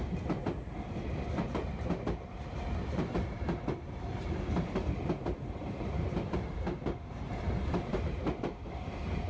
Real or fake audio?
fake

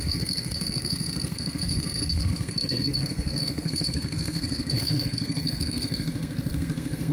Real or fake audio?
fake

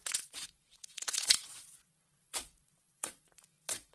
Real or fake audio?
fake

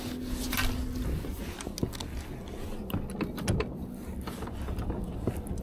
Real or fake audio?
real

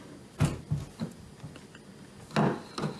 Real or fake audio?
real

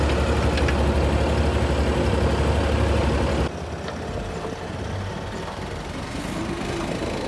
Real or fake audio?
real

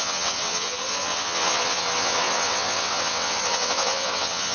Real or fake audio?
fake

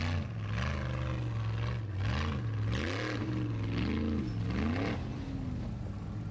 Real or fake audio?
real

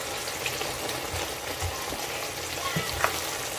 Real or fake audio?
real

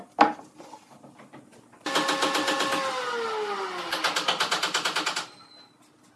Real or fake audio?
real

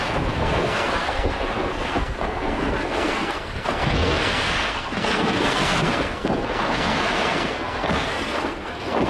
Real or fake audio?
fake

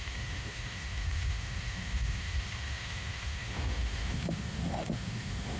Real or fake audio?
fake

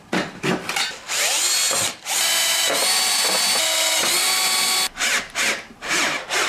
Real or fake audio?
real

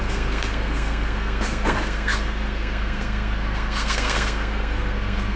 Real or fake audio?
fake